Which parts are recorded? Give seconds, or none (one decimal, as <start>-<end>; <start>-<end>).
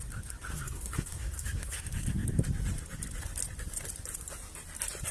0.0-0.5; 1.8-5.1